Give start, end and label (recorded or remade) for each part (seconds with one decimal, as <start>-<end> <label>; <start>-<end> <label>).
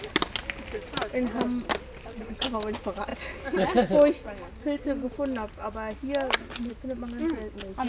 0.0-7.9 recorded